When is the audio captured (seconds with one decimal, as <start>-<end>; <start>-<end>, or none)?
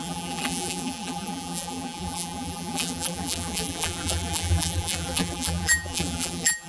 none